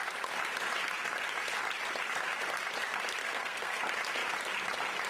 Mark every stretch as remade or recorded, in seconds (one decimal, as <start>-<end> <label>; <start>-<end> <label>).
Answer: 0.0-3.2 recorded; 3.2-3.8 remade; 3.8-5.1 recorded